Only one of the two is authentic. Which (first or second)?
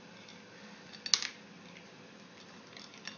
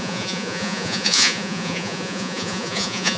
first